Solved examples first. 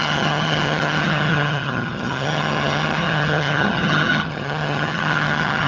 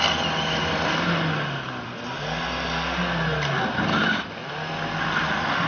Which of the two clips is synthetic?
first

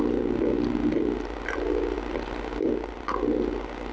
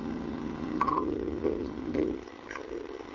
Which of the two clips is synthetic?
second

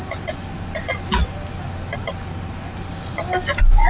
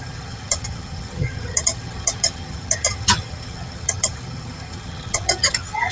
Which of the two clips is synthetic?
second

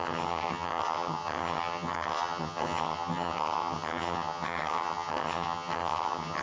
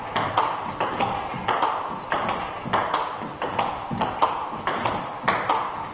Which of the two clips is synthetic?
first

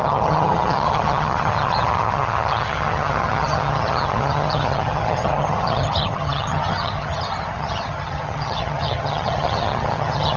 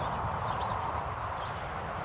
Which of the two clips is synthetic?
first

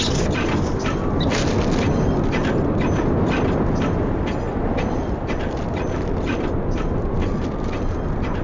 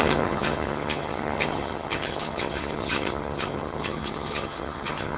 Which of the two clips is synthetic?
second